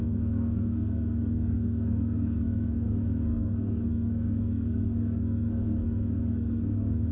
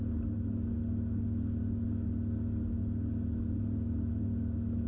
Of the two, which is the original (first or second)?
second